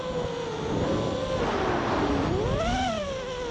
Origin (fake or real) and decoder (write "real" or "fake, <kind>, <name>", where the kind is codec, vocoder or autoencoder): real